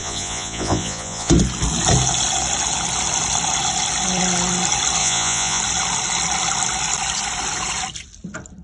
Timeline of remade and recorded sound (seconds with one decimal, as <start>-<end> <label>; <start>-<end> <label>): 0.0-1.3 remade; 1.3-5.0 recorded; 5.0-5.6 remade; 5.6-8.6 recorded